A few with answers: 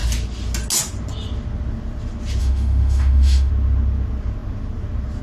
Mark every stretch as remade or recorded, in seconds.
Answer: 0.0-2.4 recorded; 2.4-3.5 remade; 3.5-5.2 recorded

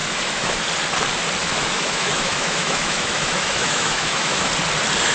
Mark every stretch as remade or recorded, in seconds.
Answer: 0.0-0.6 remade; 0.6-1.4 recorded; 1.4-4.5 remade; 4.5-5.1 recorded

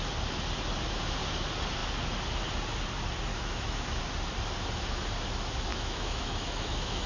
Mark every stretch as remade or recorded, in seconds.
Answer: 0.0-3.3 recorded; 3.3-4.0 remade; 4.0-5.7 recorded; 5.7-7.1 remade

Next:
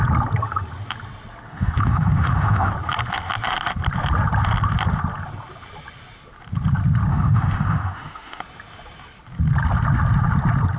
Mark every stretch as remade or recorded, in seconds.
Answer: 0.0-1.5 recorded; 1.5-2.7 remade; 2.7-7.1 recorded; 7.1-8.4 remade; 8.4-10.8 recorded

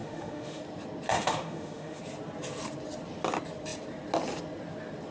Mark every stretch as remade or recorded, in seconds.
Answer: 0.0-0.6 remade; 0.6-1.1 recorded; 1.1-2.0 remade; 2.0-5.1 recorded

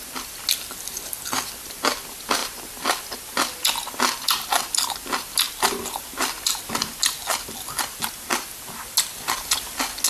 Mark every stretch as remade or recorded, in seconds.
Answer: 0.0-10.1 recorded